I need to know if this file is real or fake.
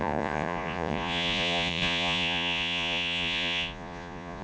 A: fake